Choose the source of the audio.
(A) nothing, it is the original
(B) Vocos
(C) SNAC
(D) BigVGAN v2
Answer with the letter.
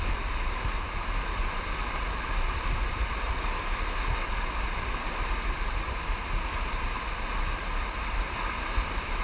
A